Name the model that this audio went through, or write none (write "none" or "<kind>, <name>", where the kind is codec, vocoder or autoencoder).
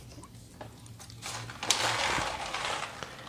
none